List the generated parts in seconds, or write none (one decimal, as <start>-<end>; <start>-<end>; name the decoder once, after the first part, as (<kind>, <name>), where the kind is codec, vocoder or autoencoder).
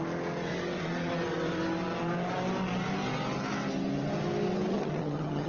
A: 4.7-5.5 (vocoder, HiFi-GAN)